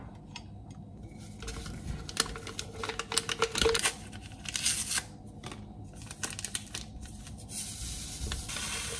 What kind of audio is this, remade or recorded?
recorded